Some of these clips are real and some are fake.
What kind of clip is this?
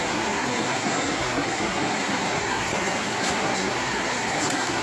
fake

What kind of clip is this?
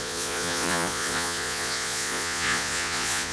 fake